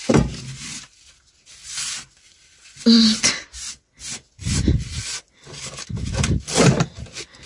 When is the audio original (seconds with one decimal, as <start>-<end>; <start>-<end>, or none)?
0.0-7.5